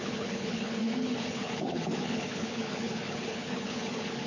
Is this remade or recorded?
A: remade